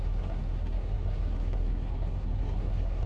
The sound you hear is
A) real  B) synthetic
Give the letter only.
B